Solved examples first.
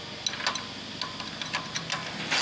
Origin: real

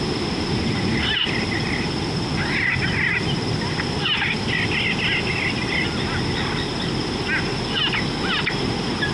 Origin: real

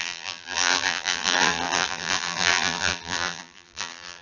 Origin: fake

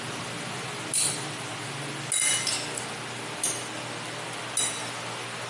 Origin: real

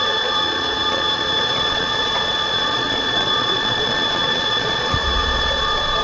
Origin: fake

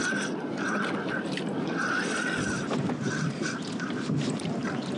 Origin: real